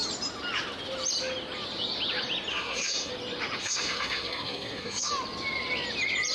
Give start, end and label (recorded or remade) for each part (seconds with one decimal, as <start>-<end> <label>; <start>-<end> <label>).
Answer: 0.0-2.5 recorded; 2.5-3.1 remade; 3.1-3.6 recorded; 3.6-5.1 remade; 5.1-6.3 recorded